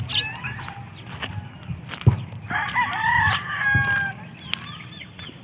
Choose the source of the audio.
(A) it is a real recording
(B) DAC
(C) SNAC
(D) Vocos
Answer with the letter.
A